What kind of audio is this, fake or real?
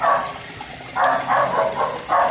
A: real